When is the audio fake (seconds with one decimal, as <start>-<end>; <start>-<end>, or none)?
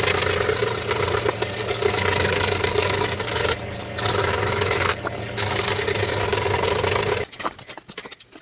1.6-5.7